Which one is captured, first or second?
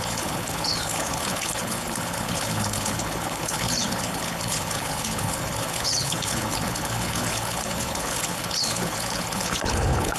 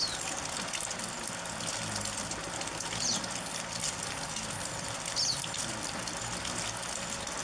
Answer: second